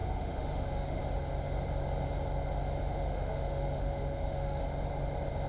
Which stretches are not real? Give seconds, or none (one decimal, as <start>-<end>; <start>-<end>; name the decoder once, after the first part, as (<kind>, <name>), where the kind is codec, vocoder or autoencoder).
0.0-1.0 (autoencoder, DAC-VAE); 2.8-4.6